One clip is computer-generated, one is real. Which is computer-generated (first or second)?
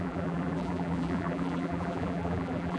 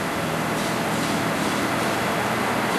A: first